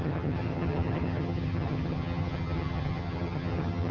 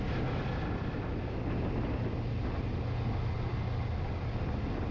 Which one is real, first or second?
second